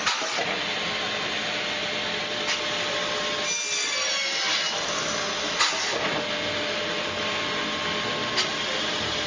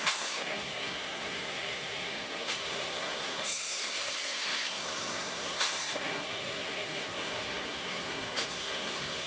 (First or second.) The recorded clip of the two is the first